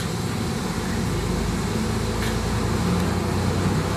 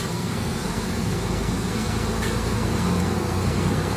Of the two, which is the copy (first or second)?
second